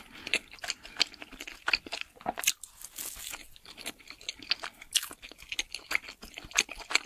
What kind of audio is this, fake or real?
real